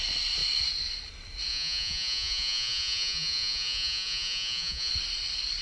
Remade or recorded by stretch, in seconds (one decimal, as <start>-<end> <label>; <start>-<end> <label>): 0.0-1.5 recorded; 1.5-4.9 remade; 4.9-5.6 recorded